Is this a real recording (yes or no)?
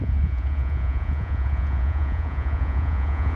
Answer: no